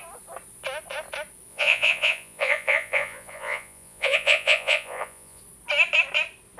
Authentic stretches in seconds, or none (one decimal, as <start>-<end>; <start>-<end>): 0.0-1.5; 5.4-6.6